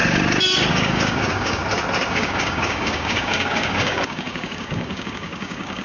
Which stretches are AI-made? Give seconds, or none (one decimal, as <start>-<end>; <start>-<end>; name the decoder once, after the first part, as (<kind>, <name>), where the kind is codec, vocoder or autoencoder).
0.7-1.6 (codec, DAC); 2.1-5.8